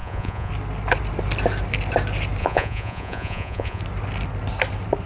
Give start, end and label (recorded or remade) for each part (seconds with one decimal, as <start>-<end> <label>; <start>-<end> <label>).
0.0-0.5 remade; 0.5-2.4 recorded; 2.4-3.8 remade; 3.8-5.1 recorded